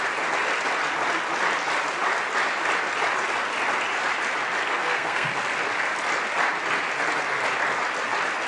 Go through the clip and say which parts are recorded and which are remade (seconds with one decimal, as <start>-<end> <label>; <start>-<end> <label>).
0.0-4.7 recorded; 4.7-5.4 remade; 5.4-8.5 recorded